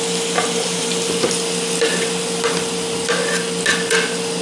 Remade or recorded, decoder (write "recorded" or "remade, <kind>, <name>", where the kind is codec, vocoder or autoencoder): recorded